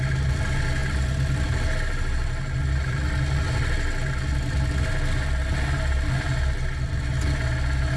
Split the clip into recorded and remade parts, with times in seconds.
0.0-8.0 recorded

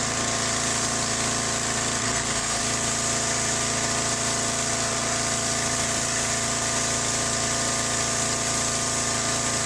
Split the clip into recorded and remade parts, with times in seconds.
0.0-2.0 recorded; 2.0-2.6 remade; 2.6-9.7 recorded